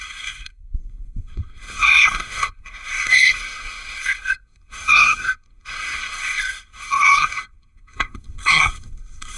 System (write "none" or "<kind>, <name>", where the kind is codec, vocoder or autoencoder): codec, SNAC